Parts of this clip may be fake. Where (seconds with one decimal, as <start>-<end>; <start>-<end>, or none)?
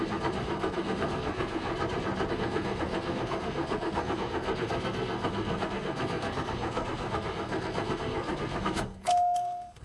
0.0-1.7; 2.3-9.8